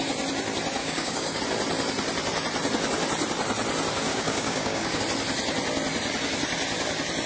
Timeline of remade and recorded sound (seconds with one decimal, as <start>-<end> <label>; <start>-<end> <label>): 0.0-0.8 recorded; 0.8-1.4 remade; 1.4-4.1 recorded; 4.1-5.0 remade; 5.0-7.3 recorded